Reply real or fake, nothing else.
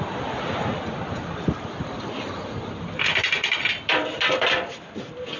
fake